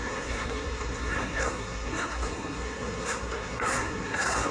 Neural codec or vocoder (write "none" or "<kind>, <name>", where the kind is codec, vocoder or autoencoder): codec, SNAC